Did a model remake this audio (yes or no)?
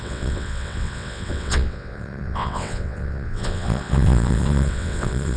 yes